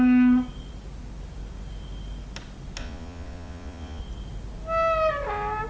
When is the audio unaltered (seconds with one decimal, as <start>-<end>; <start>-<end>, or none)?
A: 0.0-2.8; 4.0-5.7